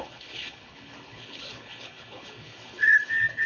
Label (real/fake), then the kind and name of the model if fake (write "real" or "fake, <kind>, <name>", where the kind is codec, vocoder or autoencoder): fake, codec, HILCodec